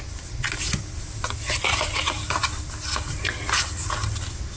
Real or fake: real